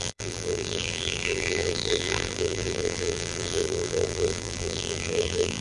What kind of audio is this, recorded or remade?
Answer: remade